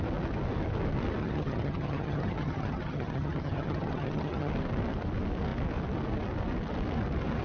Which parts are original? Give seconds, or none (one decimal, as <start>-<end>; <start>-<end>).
0.0-1.2; 4.5-7.4